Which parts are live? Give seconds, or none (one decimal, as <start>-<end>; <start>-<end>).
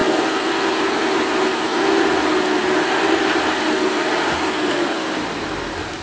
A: 0.0-6.0